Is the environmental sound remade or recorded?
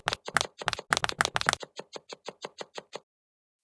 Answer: recorded